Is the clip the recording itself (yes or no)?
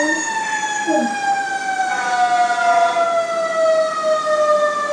yes